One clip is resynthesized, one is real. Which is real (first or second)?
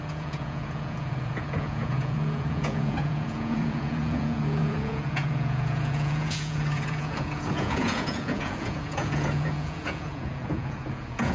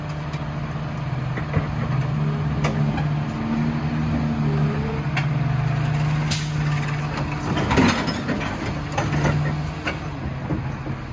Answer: second